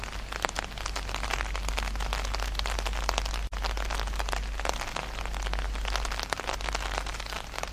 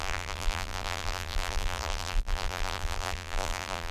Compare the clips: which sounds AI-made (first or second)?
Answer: second